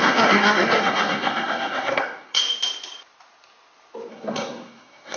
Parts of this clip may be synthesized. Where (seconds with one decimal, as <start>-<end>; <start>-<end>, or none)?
0.0-2.4; 4.1-5.2